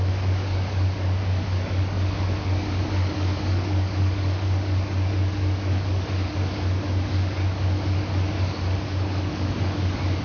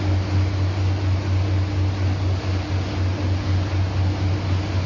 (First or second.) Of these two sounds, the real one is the second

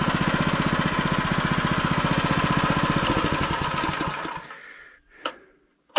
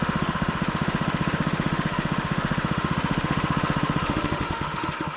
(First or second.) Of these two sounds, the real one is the first